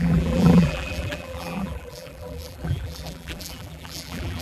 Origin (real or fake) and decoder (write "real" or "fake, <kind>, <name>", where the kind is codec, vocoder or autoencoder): fake, vocoder, BigVGAN v2